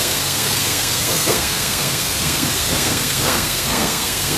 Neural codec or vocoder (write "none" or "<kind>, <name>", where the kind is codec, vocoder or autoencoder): codec, SNAC